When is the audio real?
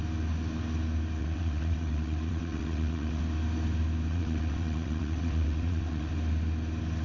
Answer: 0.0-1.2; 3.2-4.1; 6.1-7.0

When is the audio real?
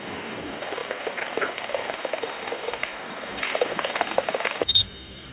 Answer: none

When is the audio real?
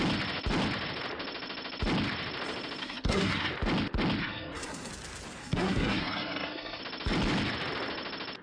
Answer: 0.0-2.8; 3.5-4.2; 4.9-5.4; 6.8-8.4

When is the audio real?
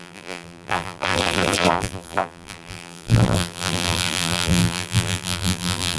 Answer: none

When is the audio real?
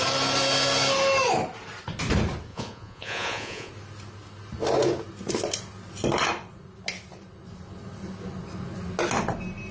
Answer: 0.0-2.5; 3.7-9.7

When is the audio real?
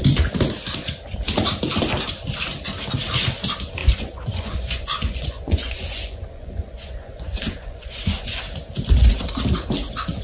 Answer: 0.0-3.8; 8.4-10.2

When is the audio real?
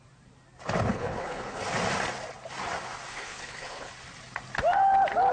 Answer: 0.0-0.9; 1.6-3.1; 3.9-5.3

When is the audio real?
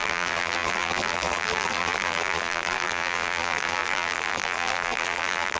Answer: none